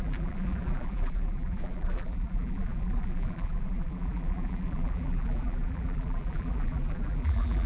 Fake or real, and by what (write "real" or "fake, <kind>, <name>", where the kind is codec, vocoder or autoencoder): fake, vocoder, BigVGAN v2